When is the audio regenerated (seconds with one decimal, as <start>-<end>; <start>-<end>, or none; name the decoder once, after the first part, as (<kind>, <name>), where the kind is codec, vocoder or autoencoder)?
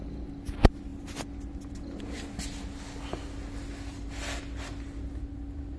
none